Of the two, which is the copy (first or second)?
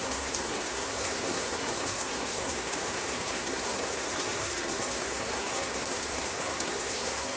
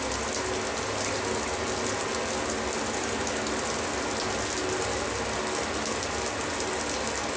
first